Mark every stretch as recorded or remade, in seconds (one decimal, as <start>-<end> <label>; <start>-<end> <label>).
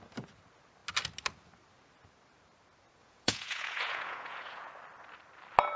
0.0-3.0 recorded; 3.0-4.7 remade; 4.7-5.8 recorded